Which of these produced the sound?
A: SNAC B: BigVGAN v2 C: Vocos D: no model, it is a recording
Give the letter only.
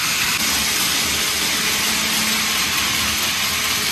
D